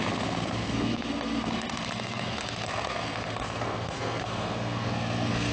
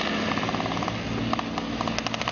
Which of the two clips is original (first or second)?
second